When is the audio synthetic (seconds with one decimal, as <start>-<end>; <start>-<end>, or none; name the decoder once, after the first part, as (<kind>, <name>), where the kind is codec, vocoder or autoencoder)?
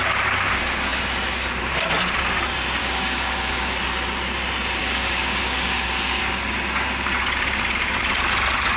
2.8-3.8 (codec, DAC); 4.8-6.2